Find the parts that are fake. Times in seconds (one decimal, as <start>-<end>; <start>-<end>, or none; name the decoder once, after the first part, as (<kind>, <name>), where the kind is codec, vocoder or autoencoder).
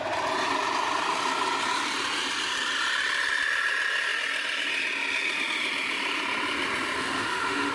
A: 7.0-7.7 (autoencoder, DAC-VAE)